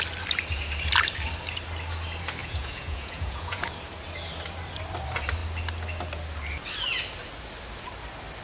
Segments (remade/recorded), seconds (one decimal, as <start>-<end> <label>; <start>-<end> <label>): 0.0-2.4 recorded; 2.4-3.7 remade; 3.7-8.4 recorded